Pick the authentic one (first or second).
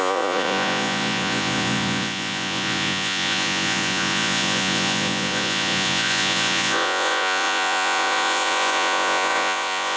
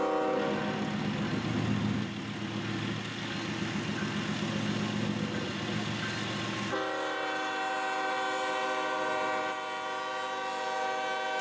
second